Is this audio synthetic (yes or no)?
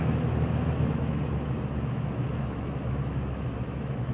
yes